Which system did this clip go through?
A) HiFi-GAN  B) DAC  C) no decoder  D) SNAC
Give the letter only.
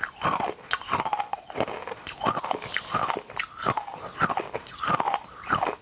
C